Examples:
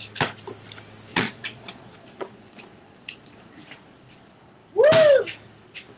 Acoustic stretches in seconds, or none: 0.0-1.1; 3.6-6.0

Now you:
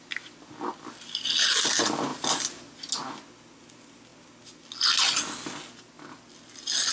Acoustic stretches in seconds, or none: 0.0-6.9

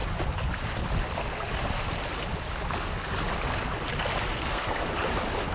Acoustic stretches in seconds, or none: 0.0-4.3; 4.9-5.5

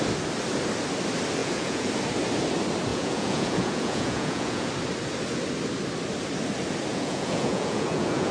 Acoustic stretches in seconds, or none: 0.0-1.4; 1.9-2.9; 4.7-6.9

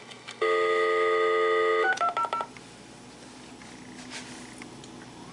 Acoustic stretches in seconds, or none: 1.9-5.3

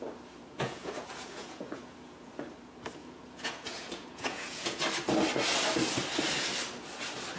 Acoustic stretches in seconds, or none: 0.0-0.4; 2.3-3.0; 4.8-7.4